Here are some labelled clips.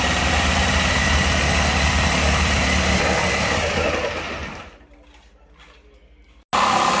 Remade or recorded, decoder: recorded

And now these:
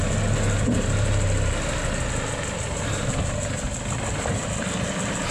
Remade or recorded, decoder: recorded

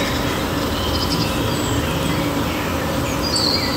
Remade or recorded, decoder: recorded